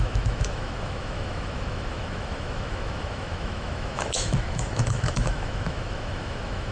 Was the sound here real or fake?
fake